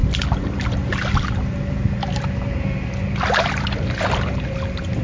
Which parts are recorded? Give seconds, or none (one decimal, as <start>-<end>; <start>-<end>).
0.0-5.0